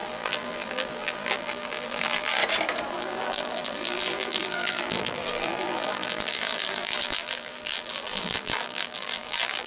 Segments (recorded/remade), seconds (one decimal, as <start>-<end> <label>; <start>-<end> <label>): 0.0-2.4 remade; 2.4-2.9 recorded; 2.9-9.7 remade